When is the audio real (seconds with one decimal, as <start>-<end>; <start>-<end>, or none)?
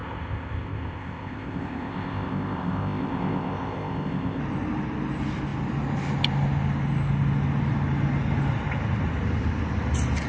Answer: 4.4-10.3